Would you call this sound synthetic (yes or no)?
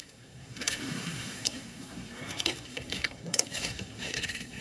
yes